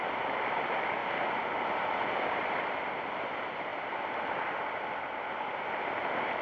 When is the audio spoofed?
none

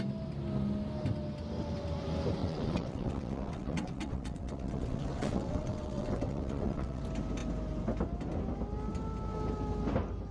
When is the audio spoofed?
2.4-7.0 (vocoder, WaveNeXt)

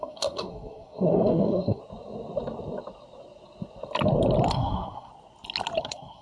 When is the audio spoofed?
0.0-1.8 (codec, SNAC); 4.5-5.1; 5.8-6.2

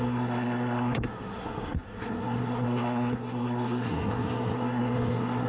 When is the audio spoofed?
0.0-5.5 (codec, SNAC)

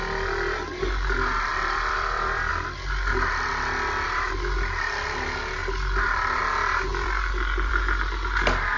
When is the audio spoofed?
1.5-2.5 (vocoder, BigVGAN v2); 5.6-6.4; 6.9-7.7